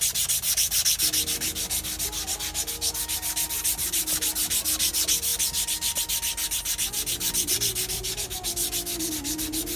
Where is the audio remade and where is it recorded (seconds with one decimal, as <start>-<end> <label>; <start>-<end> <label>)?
0.0-9.8 recorded